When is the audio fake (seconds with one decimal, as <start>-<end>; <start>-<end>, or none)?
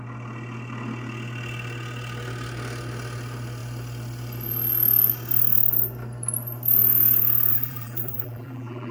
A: 7.5-8.9